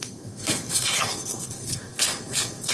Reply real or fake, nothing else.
fake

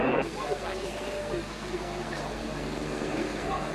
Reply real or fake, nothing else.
fake